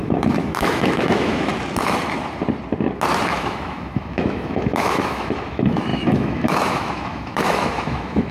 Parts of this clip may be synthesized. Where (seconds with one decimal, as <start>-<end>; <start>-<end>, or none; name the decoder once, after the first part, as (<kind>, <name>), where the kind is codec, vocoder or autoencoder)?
0.0-1.5 (autoencoder, DAC-VAE); 3.3-8.3